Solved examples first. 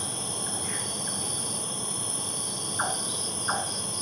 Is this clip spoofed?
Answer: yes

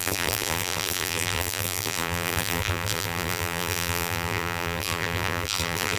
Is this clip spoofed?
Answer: yes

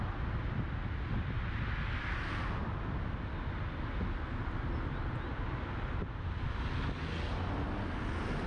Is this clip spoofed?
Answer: no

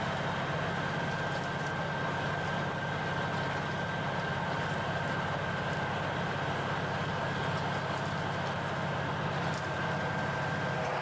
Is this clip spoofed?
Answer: no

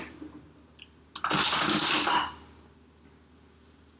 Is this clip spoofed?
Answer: no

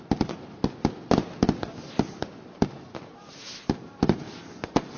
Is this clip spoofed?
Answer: no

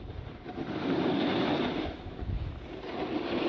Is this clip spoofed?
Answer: no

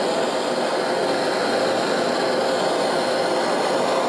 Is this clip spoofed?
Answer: no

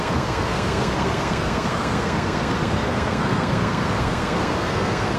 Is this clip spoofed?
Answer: yes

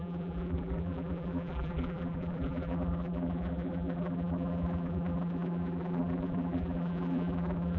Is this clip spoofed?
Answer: yes